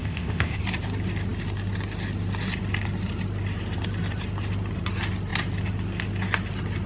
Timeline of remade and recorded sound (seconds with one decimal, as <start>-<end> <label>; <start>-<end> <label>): 0.0-0.6 remade; 0.6-6.9 recorded